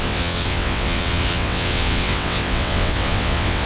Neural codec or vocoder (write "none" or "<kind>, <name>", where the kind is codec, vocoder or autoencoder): vocoder, WaveNeXt